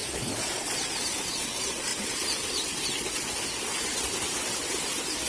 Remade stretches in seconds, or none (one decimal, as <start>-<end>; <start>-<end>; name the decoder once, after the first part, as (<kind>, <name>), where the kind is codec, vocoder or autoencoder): none